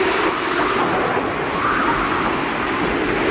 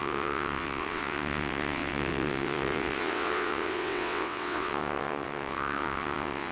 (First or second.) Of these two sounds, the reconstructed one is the second